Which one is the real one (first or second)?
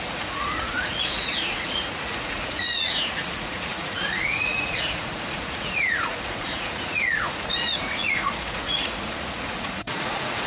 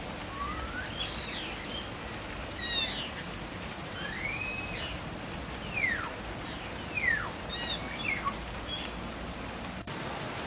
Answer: second